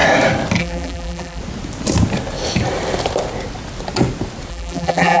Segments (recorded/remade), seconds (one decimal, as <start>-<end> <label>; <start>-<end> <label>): 0.0-0.6 recorded; 0.6-1.4 remade; 1.4-4.5 recorded; 4.5-5.2 remade